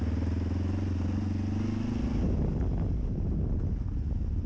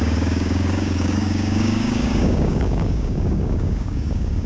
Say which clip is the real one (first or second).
first